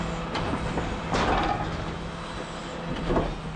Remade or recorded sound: recorded